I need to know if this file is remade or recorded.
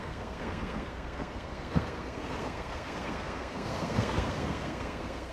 remade